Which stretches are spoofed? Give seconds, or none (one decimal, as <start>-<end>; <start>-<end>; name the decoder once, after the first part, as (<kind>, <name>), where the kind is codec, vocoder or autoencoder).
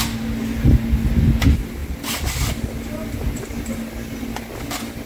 none